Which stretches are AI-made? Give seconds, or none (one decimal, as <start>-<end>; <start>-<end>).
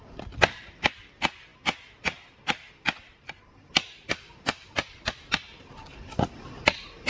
none